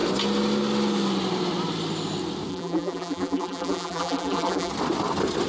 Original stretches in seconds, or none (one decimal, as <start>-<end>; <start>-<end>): 0.0-2.5; 4.7-5.5